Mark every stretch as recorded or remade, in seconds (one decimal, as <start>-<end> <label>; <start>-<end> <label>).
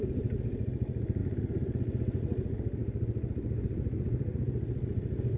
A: 0.0-5.4 recorded